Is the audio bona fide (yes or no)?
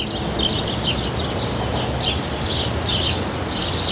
yes